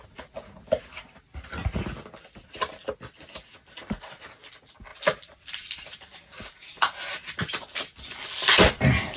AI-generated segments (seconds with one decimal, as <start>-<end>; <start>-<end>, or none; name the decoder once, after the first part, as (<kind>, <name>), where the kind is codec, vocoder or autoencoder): 4.9-7.4 (vocoder, BigVGAN v2)